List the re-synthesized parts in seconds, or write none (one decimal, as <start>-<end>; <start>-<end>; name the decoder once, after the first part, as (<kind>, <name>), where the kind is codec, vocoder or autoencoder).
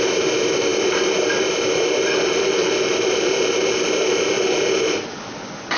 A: none